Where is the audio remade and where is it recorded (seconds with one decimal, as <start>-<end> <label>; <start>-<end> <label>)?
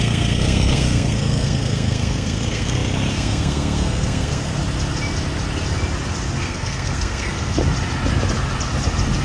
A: 0.0-4.6 remade; 4.6-6.4 recorded; 6.4-7.6 remade; 7.6-9.2 recorded